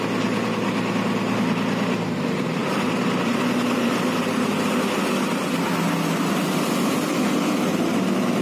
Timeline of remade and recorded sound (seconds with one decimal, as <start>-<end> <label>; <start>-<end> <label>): 0.0-8.4 recorded